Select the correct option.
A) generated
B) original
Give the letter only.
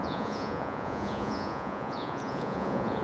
A